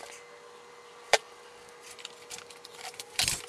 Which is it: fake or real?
fake